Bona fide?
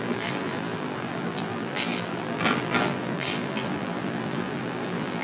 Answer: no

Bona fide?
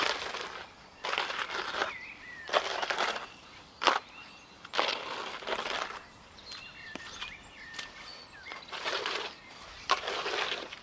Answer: no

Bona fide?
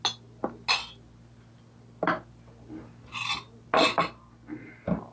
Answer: yes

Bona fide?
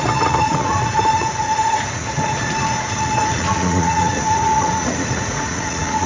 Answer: no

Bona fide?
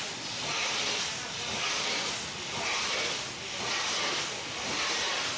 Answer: yes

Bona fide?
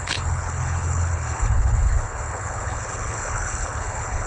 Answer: no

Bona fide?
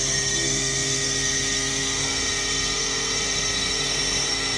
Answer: no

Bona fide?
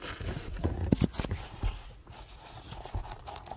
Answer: no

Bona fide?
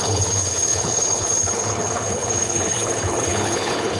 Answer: no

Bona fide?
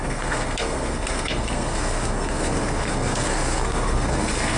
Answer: no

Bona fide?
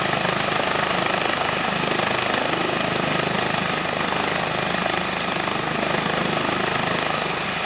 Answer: yes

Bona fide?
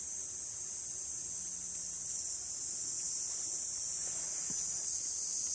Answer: yes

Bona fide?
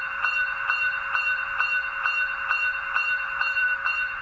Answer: no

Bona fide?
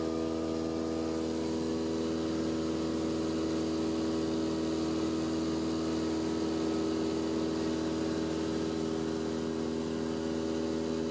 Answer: yes